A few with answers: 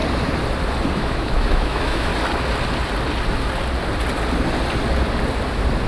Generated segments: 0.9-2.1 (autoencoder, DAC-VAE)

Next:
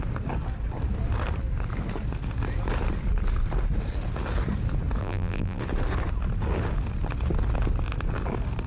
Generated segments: 5.0-5.6 (vocoder, BigVGAN v2)

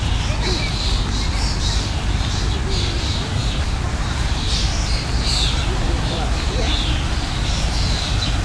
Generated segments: none

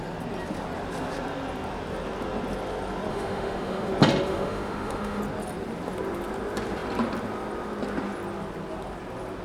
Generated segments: 3.1-3.9 (autoencoder, DAC-VAE); 4.3-5.2